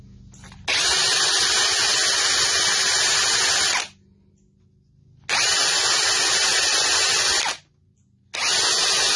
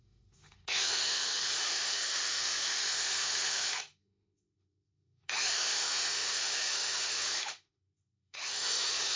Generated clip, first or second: second